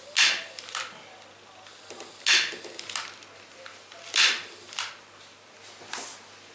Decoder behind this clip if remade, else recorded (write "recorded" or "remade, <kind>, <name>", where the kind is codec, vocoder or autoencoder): recorded